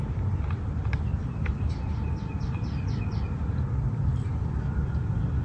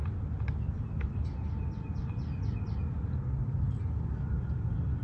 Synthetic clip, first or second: first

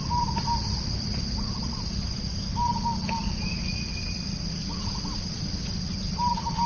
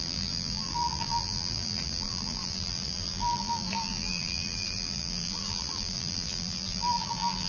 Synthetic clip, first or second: second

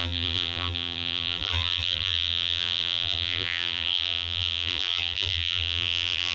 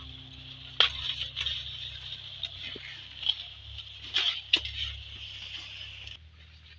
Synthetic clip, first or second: first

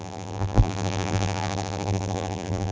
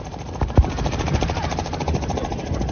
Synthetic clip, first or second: first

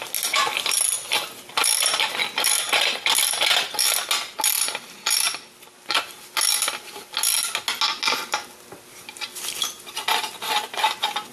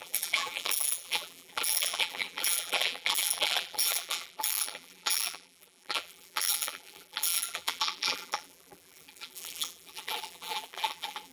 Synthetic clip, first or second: second